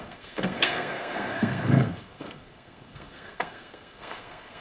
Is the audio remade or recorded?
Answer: remade